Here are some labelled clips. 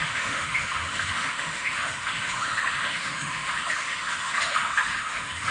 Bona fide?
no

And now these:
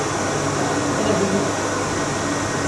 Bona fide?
yes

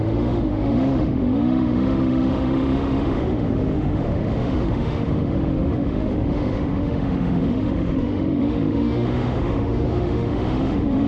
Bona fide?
no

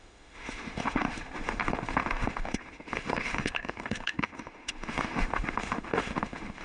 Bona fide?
no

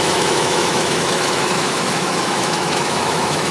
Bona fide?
no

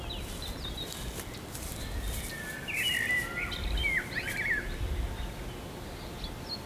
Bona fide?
yes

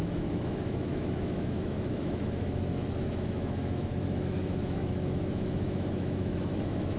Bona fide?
no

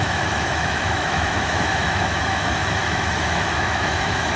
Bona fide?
no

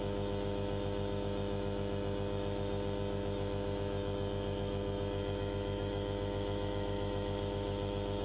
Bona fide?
no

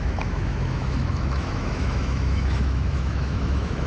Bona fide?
no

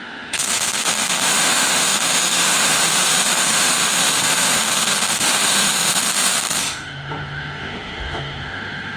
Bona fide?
no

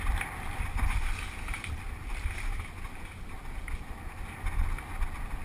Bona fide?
yes